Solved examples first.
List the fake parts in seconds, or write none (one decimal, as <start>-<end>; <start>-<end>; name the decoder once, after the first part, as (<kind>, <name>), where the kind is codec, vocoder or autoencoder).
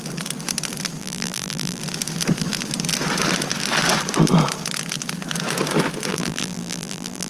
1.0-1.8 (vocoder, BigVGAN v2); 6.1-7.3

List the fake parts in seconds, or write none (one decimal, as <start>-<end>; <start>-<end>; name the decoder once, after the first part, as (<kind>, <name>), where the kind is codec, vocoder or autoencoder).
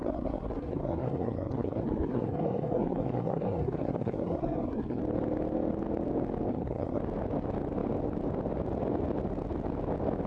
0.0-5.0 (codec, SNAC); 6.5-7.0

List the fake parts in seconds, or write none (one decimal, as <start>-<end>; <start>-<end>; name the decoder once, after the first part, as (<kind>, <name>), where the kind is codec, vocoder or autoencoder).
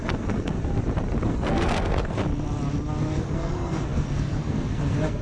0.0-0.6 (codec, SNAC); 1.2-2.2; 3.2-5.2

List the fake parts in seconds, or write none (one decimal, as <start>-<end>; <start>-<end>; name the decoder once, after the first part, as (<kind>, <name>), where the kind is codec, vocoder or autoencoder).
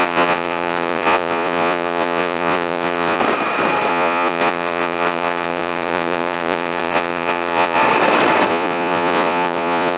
0.0-3.2 (vocoder, Vocos); 3.9-7.8; 8.5-10.0